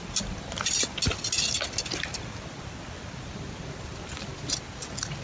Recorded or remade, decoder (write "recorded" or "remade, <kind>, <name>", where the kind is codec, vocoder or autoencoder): recorded